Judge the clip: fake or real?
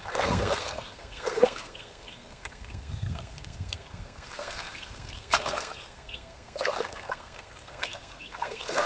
fake